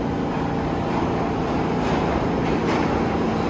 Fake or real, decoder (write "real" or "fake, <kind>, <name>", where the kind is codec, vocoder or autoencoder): fake, vocoder, BigVGAN v2